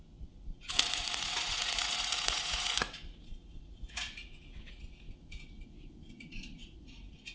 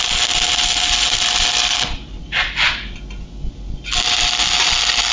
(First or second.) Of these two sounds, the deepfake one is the first